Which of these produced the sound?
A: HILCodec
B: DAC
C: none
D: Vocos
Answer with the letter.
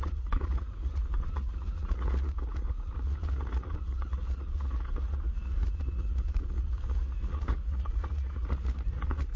D